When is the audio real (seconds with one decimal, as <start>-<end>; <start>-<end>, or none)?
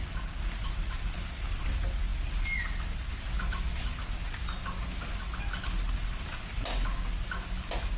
0.0-8.0